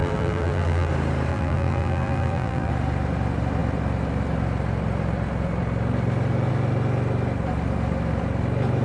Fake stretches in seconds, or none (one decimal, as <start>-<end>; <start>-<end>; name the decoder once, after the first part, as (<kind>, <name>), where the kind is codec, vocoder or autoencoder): 0.0-0.9 (vocoder, BigVGAN v2); 1.3-2.7